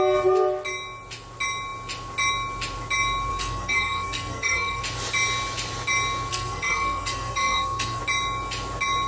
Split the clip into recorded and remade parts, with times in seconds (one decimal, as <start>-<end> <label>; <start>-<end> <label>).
0.0-3.3 recorded; 3.3-4.8 remade; 4.8-6.3 recorded; 6.3-8.0 remade; 8.0-9.1 recorded